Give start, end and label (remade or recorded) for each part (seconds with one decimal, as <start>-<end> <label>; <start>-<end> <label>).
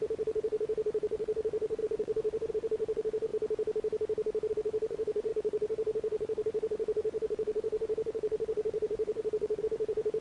0.0-3.3 remade; 3.3-4.5 recorded; 4.5-10.2 remade